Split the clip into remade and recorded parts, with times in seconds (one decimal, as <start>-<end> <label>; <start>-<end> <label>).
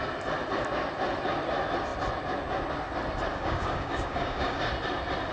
0.0-3.3 recorded; 3.3-4.7 remade; 4.7-5.3 recorded